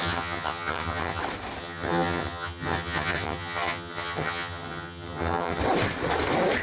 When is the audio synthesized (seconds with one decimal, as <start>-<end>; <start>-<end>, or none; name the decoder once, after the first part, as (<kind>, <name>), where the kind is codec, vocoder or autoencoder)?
0.0-1.2 (vocoder, HiFi-GAN); 1.6-5.6